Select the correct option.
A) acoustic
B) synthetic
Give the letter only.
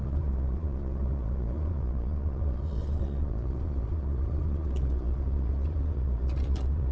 B